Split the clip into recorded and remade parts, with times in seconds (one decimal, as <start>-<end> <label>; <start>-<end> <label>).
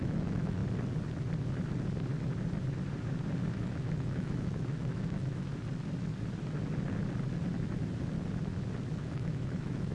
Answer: 0.0-0.6 remade; 0.6-3.5 recorded; 3.5-5.5 remade; 5.5-9.0 recorded; 9.0-9.9 remade